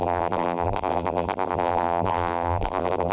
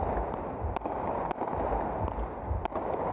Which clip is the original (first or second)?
second